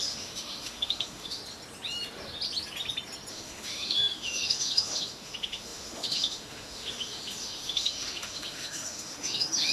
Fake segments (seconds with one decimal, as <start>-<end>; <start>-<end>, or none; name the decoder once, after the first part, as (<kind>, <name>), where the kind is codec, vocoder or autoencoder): 0.0-1.4 (autoencoder, DAC-VAE); 3.3-9.7

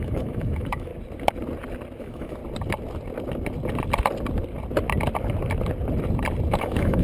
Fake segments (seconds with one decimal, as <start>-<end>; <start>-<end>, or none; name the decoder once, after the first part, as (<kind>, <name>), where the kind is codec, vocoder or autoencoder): 0.0-0.9 (autoencoder, DAC-VAE); 2.0-2.4; 6.6-7.0

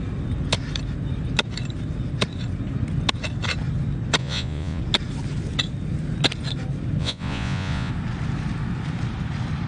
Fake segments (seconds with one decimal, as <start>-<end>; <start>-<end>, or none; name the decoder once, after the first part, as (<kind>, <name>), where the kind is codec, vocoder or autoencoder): 4.2-4.8 (vocoder, Vocos); 7.0-7.9